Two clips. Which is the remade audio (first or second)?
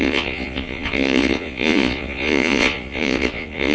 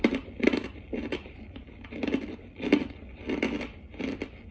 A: first